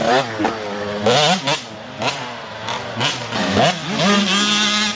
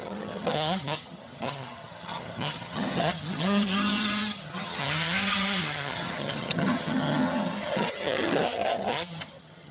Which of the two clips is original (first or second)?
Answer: first